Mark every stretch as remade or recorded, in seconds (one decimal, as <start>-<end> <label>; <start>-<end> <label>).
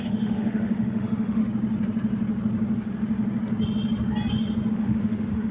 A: 0.0-1.4 remade; 1.4-4.7 recorded; 4.7-5.5 remade